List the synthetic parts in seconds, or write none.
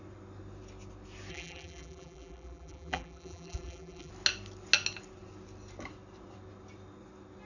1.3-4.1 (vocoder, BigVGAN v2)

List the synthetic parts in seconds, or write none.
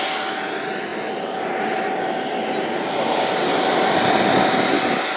none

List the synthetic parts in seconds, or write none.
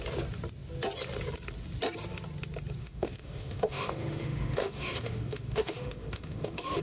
2.8-6.8 (autoencoder, DAC-VAE)